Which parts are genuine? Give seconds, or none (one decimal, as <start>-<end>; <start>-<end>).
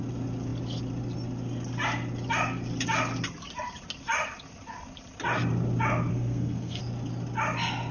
0.0-6.1; 6.8-7.9